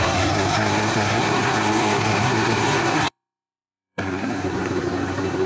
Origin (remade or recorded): remade